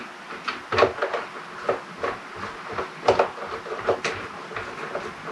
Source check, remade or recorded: recorded